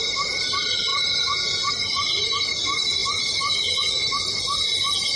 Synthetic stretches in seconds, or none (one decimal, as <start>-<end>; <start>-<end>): 0.9-1.7